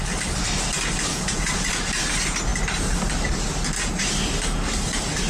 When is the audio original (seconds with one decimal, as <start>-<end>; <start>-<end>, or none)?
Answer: 0.0-1.1; 1.9-5.3